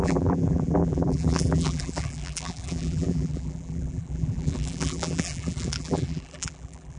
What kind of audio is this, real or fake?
fake